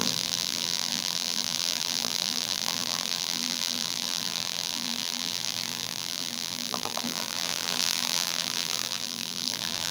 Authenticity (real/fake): fake